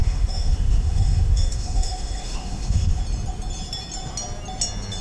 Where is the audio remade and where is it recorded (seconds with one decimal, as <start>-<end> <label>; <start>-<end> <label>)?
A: 0.0-3.0 remade; 3.0-5.0 recorded